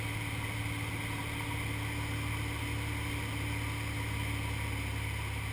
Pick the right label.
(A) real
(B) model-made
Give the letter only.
A